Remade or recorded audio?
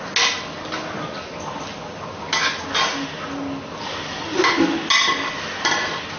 recorded